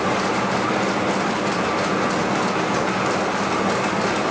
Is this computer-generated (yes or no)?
no